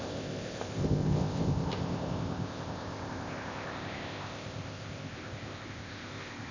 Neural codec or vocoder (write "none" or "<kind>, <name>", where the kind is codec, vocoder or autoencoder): codec, ZipCodec